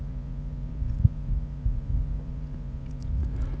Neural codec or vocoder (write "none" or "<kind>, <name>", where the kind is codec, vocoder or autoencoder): vocoder, Vocos